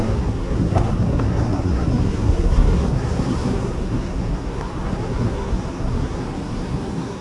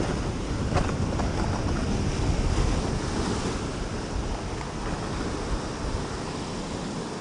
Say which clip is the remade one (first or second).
first